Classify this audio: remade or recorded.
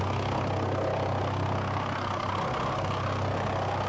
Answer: recorded